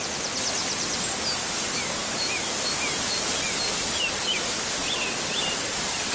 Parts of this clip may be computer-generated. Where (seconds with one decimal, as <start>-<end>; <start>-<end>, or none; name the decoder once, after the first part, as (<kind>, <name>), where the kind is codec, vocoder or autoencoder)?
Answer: 0.6-1.2 (vocoder, BigVGAN v2); 2.0-2.7; 4.8-5.4